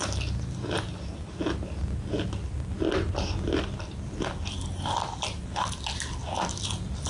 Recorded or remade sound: recorded